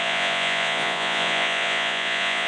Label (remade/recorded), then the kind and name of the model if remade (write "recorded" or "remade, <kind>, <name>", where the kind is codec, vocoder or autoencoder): remade, vocoder, Vocos